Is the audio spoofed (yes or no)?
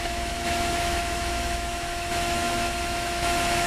yes